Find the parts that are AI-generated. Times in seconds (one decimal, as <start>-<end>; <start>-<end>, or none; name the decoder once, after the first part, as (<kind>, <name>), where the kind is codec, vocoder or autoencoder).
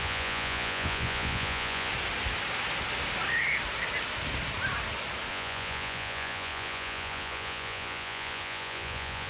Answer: 0.0-1.9 (vocoder, Vocos); 5.3-9.3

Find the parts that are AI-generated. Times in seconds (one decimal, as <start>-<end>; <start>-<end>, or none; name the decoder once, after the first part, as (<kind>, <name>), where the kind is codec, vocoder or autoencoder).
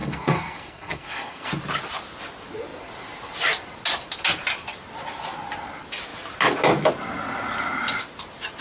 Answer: 0.0-1.5 (codec, SNAC)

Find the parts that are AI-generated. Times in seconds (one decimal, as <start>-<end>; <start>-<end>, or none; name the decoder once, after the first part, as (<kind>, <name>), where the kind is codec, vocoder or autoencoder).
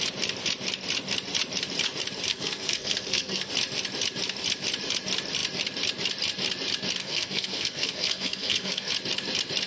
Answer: 2.3-3.5 (codec, SNAC); 7.0-8.9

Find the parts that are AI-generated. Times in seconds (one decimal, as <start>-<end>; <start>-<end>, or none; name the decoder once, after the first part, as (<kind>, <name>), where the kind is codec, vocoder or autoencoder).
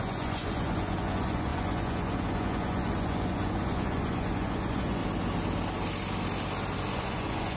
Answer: 0.0-5.0 (vocoder, Vocos); 6.9-7.6